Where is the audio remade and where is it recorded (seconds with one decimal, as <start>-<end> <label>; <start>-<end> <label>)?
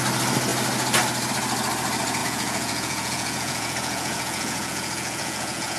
0.0-2.2 recorded; 2.2-5.8 remade